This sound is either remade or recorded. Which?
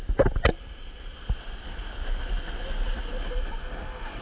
recorded